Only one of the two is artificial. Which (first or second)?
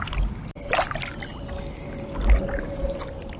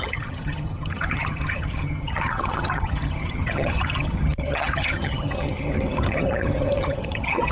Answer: second